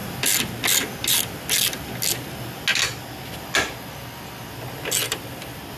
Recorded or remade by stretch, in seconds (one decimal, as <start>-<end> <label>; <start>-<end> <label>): 0.0-5.8 recorded